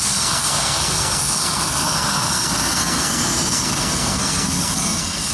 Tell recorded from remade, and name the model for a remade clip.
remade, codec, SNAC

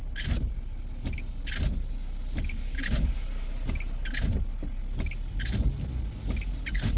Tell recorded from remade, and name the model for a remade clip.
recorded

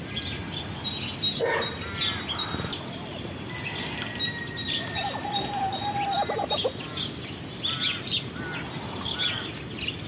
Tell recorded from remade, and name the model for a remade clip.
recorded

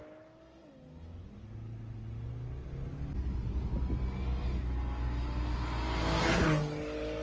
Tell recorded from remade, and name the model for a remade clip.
recorded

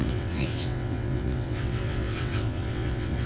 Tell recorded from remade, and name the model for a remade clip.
remade, vocoder, WaveNeXt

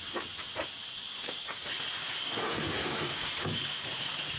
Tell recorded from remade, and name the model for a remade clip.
recorded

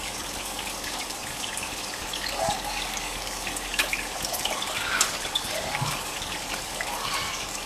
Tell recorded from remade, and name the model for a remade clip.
remade, codec, DAC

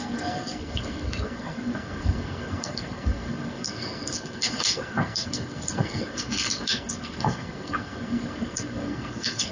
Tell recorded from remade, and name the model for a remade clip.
remade, codec, SNAC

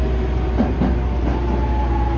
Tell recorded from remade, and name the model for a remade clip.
recorded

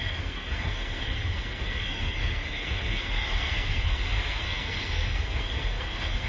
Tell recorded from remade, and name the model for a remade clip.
remade, codec, SNAC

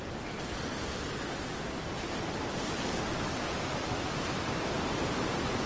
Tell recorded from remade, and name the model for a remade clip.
recorded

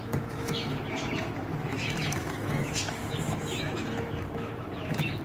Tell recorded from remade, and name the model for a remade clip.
remade, autoencoder, DAC-VAE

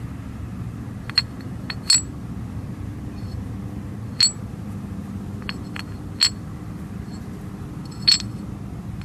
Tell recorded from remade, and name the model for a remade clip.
recorded